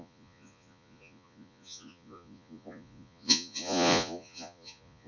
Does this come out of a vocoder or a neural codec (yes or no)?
yes